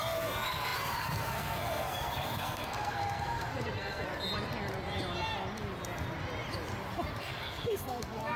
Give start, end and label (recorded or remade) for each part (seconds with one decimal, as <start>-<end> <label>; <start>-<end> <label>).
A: 0.0-4.1 remade; 4.1-7.2 recorded; 7.2-8.4 remade